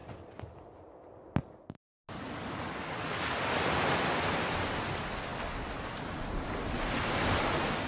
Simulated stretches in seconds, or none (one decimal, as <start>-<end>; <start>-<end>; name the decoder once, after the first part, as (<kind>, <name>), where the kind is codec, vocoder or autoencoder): none